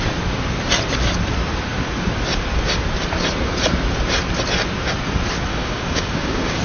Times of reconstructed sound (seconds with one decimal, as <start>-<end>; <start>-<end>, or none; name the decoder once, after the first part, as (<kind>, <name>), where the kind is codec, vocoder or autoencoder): 5.5-6.6 (codec, DAC)